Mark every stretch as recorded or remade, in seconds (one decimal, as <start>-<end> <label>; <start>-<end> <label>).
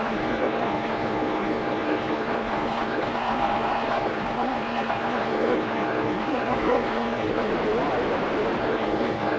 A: 0.0-7.5 remade; 7.5-8.6 recorded; 8.6-9.4 remade